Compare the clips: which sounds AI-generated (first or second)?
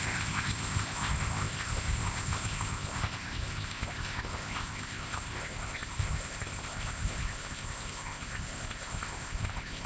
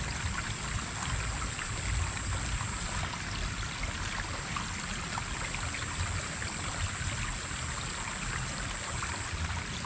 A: first